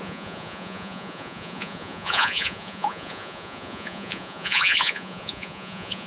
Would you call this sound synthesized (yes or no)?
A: yes